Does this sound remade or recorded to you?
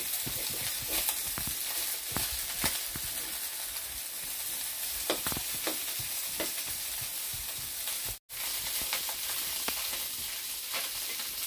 recorded